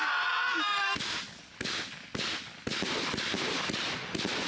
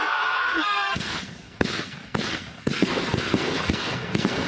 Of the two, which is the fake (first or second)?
second